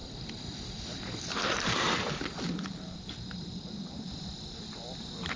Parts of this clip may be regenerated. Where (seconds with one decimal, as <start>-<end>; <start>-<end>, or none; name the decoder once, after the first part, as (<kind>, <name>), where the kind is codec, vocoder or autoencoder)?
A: none